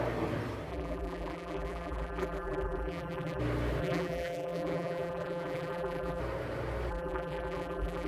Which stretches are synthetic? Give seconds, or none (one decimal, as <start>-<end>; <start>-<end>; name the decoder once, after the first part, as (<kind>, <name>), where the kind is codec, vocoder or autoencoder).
0.7-3.4 (vocoder, BigVGAN v2); 3.8-6.2; 6.9-8.1